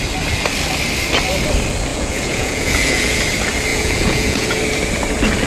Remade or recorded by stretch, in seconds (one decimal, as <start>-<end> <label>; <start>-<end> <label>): 0.0-1.9 recorded; 1.9-3.2 remade; 3.2-3.7 recorded; 3.7-4.6 remade; 4.6-5.5 recorded